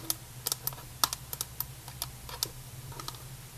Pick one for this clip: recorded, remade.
recorded